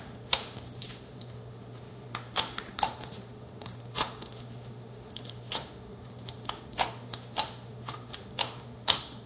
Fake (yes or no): yes